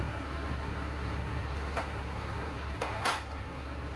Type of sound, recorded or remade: remade